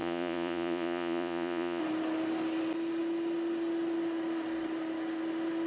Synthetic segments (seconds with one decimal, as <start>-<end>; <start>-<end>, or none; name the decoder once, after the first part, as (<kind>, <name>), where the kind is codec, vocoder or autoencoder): 0.0-1.8 (vocoder, Vocos)